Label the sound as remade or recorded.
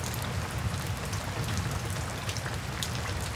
recorded